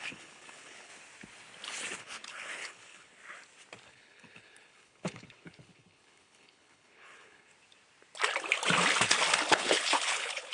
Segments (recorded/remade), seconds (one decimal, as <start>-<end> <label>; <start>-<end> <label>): 0.0-0.9 remade; 0.9-2.0 recorded; 2.0-3.2 remade; 3.2-3.9 recorded; 3.9-7.5 remade; 7.5-9.5 recorded; 9.5-10.5 remade